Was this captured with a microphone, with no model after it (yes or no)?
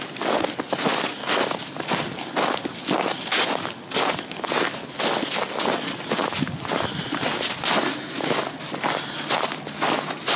yes